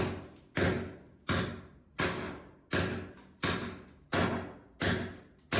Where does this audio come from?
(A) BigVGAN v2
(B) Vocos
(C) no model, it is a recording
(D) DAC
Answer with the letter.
C